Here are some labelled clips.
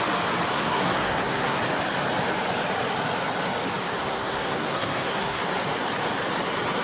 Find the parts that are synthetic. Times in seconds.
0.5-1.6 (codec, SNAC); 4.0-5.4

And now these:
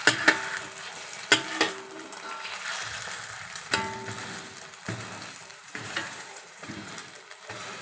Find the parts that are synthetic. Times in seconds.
5.5-6.9 (vocoder, Vocos)

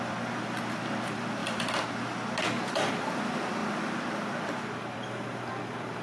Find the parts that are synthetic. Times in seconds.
0.0-1.4 (vocoder, BigVGAN v2); 2.6-6.0

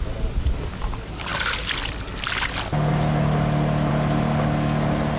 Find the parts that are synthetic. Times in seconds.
none

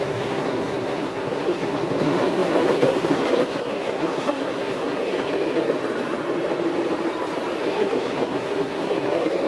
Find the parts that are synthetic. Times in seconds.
0.0-5.7 (codec, SNAC); 7.6-9.5

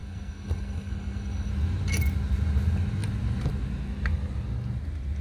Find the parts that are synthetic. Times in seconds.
0.0-1.5 (codec, SNAC)

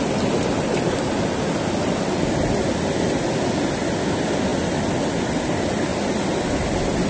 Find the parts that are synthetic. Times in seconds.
none

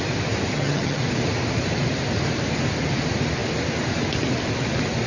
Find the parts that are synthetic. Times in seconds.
0.5-1.0 (vocoder, HiFi-GAN)